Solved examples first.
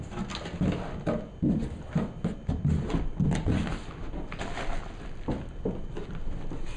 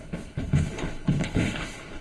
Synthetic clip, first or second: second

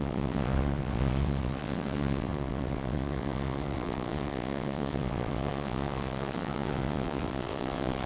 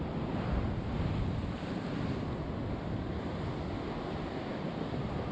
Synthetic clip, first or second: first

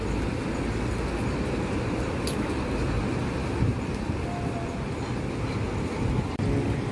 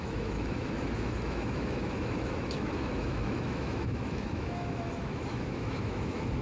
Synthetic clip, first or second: second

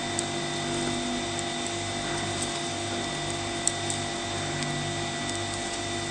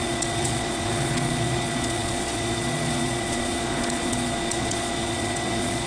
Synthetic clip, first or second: second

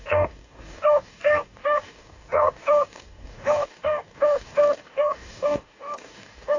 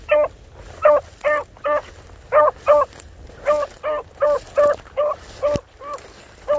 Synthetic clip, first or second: first